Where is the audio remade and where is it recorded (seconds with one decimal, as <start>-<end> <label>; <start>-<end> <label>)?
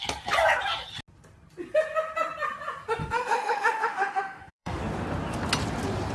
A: 0.0-3.0 recorded; 3.0-4.8 remade; 4.8-6.1 recorded